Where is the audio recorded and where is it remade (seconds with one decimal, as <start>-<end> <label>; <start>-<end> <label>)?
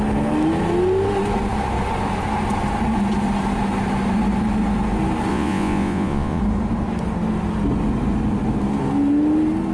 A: 0.0-5.3 recorded; 5.3-6.4 remade; 6.4-9.7 recorded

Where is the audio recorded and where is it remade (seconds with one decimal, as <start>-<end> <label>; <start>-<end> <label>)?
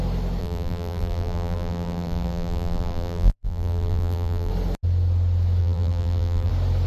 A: 0.0-0.4 recorded; 0.4-4.5 remade; 4.5-5.6 recorded; 5.6-6.5 remade; 6.5-6.9 recorded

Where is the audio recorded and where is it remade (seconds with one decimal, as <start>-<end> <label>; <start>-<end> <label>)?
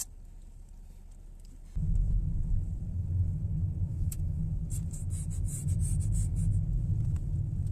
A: 0.0-3.9 recorded; 3.9-4.4 remade; 4.4-7.7 recorded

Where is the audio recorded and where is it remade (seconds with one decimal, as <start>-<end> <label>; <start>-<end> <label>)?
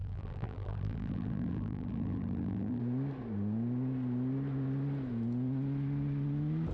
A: 0.0-2.8 remade; 2.8-6.7 recorded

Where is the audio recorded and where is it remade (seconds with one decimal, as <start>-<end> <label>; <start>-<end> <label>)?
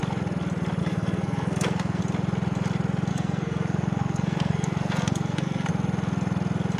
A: 0.0-0.8 recorded; 0.8-2.0 remade; 2.0-3.1 recorded; 3.1-5.7 remade; 5.7-6.8 recorded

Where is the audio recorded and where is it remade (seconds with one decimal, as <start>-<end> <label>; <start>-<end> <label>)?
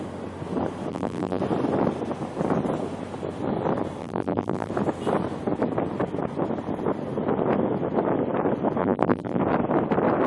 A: 0.0-0.9 recorded; 0.9-1.4 remade; 1.4-4.0 recorded; 4.0-4.7 remade; 4.7-8.8 recorded; 8.8-9.4 remade; 9.4-10.3 recorded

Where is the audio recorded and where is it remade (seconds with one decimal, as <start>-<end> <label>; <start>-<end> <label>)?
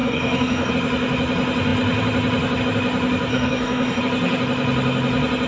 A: 0.0-0.7 remade; 0.7-3.3 recorded; 3.3-4.0 remade; 4.0-5.5 recorded